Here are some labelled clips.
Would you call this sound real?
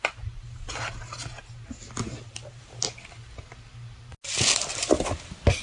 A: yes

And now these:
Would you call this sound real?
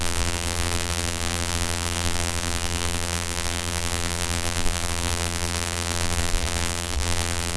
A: no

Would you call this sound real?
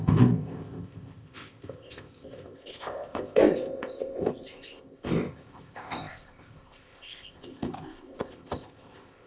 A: no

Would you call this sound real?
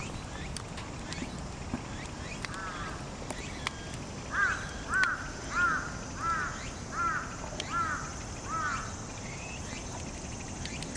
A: yes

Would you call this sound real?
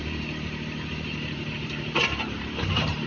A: no